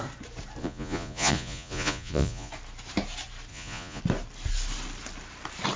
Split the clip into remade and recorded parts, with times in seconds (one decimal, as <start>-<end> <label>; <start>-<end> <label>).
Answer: 0.0-0.6 recorded; 0.6-2.5 remade; 2.5-3.5 recorded; 3.5-4.0 remade; 4.0-5.8 recorded